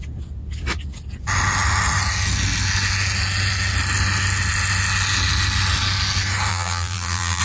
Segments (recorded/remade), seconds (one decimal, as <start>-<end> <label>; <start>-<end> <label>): 0.0-6.5 recorded; 6.5-7.4 remade